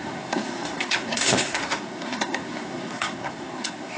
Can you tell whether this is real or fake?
fake